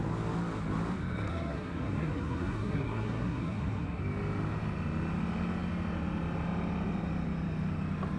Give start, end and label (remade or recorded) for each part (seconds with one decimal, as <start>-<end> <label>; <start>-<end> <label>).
0.0-1.3 recorded; 1.3-4.0 remade; 4.0-8.2 recorded